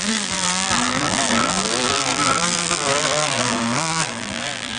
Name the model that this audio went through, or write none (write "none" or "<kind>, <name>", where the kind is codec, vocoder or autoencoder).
vocoder, BigVGAN v2